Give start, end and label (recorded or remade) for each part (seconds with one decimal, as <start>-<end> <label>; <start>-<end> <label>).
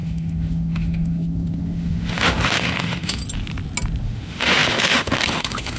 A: 0.0-3.2 remade; 3.2-4.0 recorded; 4.0-5.8 remade